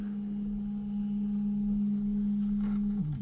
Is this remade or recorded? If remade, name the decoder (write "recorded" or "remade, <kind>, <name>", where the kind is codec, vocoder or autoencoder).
recorded